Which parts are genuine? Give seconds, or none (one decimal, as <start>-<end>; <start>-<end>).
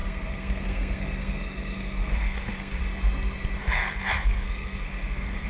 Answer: 2.8-3.6